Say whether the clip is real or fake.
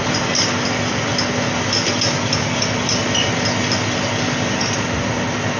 real